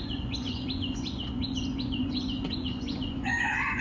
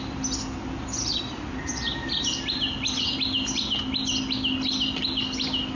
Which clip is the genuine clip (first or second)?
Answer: second